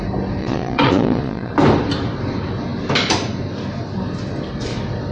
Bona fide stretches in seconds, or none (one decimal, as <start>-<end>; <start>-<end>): 0.0-0.4; 1.5-5.1